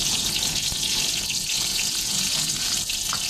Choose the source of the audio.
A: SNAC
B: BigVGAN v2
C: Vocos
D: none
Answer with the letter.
C